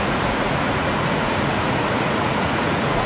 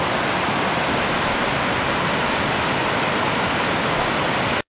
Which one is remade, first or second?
first